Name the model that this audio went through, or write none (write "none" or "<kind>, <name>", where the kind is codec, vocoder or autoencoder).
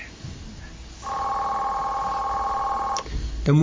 none